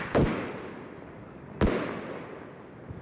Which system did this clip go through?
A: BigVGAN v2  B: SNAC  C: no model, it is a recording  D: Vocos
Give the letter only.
C